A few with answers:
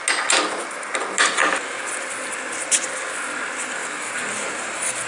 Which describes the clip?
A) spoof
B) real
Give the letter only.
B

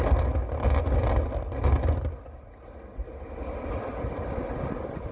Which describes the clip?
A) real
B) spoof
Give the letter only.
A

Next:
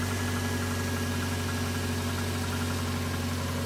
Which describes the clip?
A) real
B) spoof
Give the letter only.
A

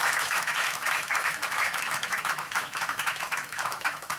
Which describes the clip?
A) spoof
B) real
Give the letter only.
A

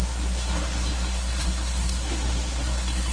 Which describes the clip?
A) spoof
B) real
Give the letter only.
A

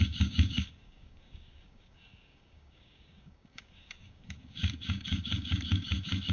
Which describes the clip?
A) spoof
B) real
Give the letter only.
A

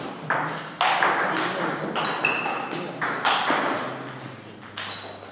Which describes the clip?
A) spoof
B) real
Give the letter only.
B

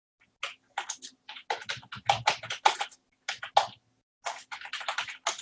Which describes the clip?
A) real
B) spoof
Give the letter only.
A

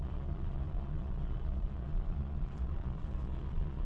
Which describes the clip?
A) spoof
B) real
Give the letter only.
A